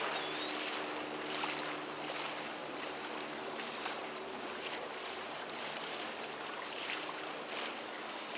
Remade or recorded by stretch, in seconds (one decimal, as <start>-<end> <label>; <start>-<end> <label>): 0.0-2.6 recorded; 2.6-7.4 remade; 7.4-8.4 recorded